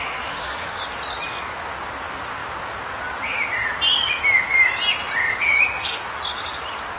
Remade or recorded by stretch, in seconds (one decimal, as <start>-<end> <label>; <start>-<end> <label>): 0.0-0.8 remade; 0.8-7.0 recorded